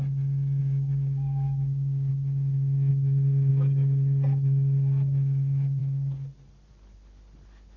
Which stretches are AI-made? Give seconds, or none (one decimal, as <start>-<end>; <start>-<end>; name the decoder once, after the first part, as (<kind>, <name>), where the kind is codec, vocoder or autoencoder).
0.6-2.1 (codec, DAC)